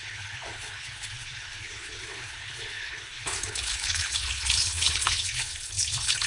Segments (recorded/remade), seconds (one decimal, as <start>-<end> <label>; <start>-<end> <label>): 0.0-6.3 remade